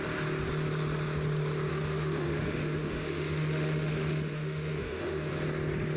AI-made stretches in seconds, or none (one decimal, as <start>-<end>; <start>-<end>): 1.7-5.3